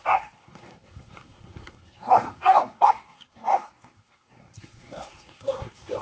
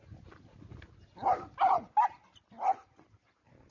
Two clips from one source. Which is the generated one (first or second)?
first